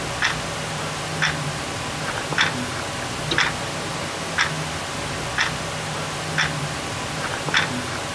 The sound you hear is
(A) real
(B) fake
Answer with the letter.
A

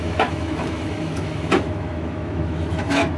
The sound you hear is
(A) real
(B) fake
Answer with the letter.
B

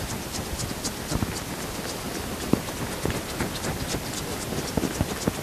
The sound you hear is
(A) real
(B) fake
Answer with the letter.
A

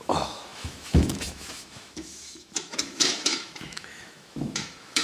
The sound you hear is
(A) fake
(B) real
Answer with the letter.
A